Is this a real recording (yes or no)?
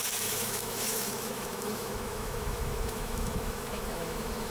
no